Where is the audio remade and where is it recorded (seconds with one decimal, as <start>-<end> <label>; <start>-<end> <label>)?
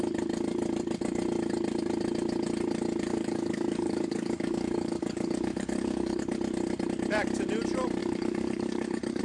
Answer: 0.0-3.1 recorded; 3.1-6.2 remade; 6.2-8.0 recorded; 8.0-9.2 remade